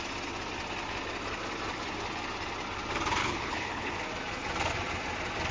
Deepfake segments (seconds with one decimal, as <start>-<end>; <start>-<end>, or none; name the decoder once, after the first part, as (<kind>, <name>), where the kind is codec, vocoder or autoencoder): 3.2-3.9 (codec, HILCodec)

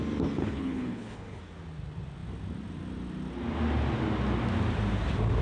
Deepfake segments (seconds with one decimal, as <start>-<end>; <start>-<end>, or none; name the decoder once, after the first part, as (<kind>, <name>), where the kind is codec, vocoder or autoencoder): 0.4-1.4 (codec, HILCodec)

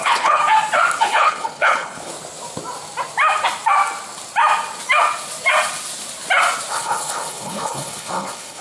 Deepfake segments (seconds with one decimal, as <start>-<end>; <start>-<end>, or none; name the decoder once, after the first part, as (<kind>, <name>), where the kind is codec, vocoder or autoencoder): 0.0-0.4 (codec, HILCodec); 1.0-2.1; 6.7-8.6

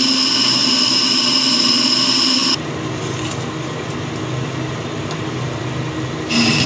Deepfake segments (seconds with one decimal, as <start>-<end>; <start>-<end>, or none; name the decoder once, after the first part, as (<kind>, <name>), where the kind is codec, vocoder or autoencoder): none

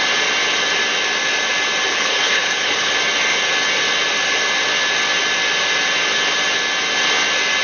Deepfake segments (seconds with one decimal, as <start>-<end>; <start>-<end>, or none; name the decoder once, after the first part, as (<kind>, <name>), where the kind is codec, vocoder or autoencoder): 1.9-2.9 (codec, HILCodec)

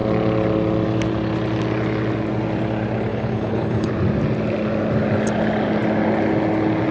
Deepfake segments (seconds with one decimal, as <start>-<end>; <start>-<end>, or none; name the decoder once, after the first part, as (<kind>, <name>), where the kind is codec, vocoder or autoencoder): 3.1-3.9 (codec, HILCodec)